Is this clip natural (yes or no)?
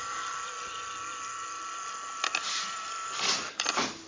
yes